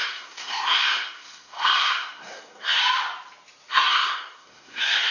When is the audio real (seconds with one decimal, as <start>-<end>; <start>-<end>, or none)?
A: 2.8-3.7